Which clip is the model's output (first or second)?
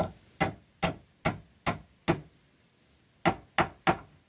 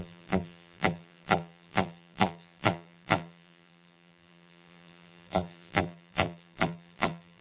second